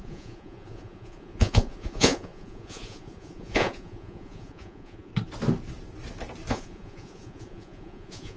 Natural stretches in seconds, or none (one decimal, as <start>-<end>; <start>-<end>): 5.1-6.5